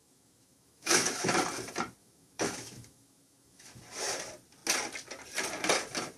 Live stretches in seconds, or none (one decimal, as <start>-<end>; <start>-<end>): 1.4-2.0; 3.8-6.2